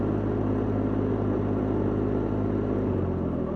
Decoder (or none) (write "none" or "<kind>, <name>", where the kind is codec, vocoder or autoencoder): none